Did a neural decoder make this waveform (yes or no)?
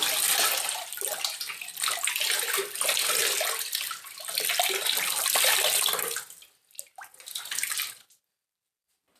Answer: no